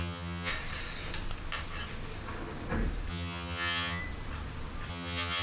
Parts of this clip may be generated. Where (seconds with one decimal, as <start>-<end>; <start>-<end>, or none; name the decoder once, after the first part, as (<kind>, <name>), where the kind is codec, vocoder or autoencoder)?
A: 0.0-0.5 (vocoder, HiFi-GAN); 3.1-4.0; 4.9-5.4

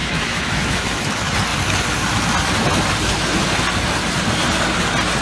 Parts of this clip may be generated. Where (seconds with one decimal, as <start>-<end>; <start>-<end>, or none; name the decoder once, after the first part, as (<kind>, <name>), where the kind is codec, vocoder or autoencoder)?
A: 0.0-1.1 (autoencoder, DAC-VAE)